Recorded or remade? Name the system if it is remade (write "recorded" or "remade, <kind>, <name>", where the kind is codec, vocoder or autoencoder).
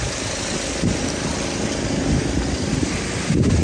recorded